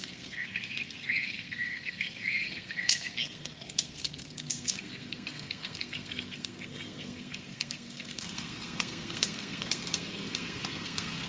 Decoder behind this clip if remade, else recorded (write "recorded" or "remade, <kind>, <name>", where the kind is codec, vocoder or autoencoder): remade, codec, SNAC